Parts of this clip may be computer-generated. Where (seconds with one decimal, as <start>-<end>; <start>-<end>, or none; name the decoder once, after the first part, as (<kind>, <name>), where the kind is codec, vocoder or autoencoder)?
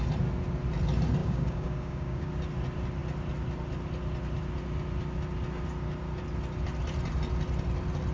1.2-2.3 (codec, DAC)